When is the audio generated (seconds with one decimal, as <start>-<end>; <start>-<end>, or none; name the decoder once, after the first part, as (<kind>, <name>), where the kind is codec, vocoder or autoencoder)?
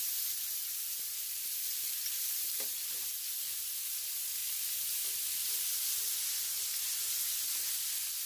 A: 0.6-2.0 (vocoder, BigVGAN v2)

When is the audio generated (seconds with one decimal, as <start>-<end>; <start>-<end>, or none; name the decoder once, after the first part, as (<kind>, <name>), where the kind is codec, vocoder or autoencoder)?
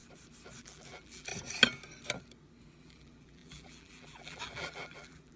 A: 0.6-1.3 (vocoder, BigVGAN v2); 2.8-5.4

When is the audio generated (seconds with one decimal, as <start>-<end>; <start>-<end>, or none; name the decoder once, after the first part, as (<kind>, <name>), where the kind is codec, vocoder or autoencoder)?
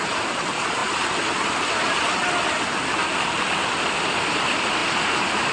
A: 4.8-5.5 (vocoder, BigVGAN v2)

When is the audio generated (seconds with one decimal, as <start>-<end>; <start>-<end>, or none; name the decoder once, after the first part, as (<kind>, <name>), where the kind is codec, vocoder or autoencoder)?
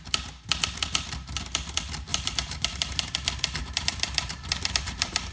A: 2.1-3.1 (vocoder, BigVGAN v2); 3.6-5.3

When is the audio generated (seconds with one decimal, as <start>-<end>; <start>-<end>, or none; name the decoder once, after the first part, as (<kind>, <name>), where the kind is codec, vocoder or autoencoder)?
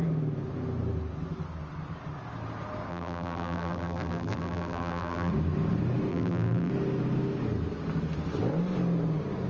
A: 2.9-5.3 (vocoder, BigVGAN v2); 6.1-6.7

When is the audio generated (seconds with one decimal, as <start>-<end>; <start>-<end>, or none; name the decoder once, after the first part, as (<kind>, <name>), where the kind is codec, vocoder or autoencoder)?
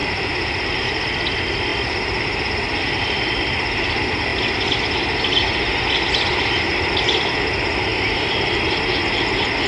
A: 0.0-0.7 (vocoder, BigVGAN v2); 7.9-8.6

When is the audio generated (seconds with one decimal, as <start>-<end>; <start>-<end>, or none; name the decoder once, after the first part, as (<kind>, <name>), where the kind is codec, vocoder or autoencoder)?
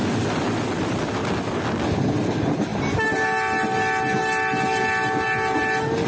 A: none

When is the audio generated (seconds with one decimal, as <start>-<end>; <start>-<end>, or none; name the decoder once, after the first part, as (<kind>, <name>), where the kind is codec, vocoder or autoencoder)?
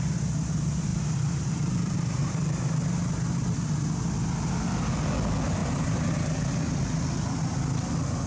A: 0.9-2.8 (vocoder, BigVGAN v2); 5.6-6.1